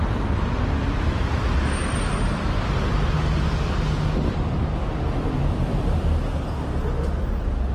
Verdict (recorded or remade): recorded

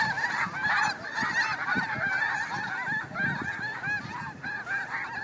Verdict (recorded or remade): recorded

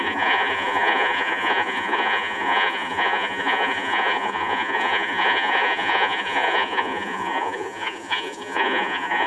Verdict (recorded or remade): remade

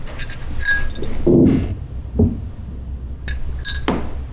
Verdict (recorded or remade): recorded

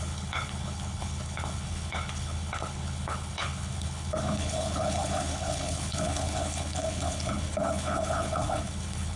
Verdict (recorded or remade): remade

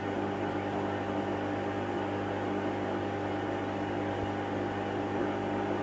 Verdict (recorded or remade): recorded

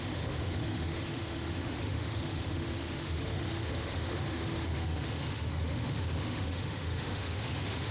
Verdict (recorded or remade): remade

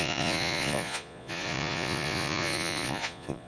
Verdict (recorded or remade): remade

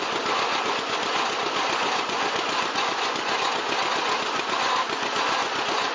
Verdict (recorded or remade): remade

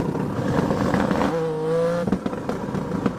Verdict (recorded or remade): recorded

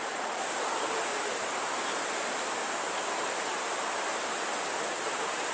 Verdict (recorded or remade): recorded